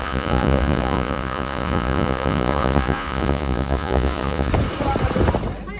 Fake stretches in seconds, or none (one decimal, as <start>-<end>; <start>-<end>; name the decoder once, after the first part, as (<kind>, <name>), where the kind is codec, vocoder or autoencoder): 0.0-4.5 (vocoder, Vocos)